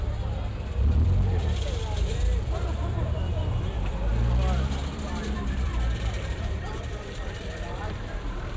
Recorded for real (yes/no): no